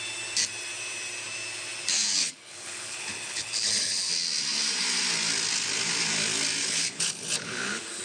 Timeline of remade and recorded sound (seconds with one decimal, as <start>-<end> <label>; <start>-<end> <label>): 0.0-2.2 recorded; 2.2-4.1 remade; 4.1-6.6 recorded; 6.6-8.0 remade